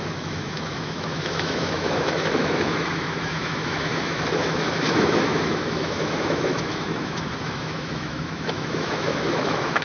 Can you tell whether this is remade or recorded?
remade